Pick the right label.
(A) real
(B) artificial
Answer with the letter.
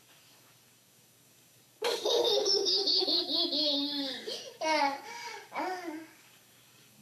B